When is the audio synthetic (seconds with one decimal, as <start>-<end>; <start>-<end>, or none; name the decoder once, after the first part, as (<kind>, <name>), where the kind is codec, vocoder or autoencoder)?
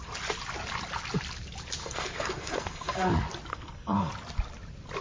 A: 1.8-3.1 (codec, SNAC); 3.5-4.1